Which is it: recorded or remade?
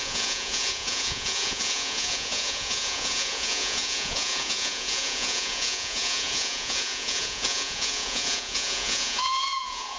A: remade